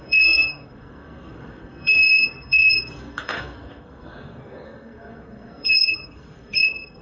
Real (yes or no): no